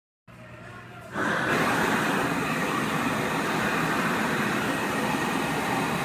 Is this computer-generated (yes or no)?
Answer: no